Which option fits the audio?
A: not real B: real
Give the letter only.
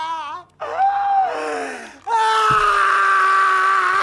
B